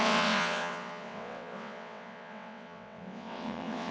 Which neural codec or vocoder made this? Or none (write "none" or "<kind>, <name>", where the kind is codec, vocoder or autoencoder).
vocoder, WaveNeXt